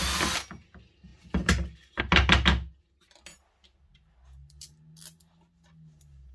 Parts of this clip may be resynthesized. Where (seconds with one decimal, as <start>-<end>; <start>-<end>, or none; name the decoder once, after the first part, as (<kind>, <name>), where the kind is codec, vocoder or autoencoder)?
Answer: none